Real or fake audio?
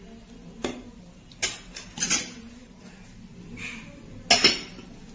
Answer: real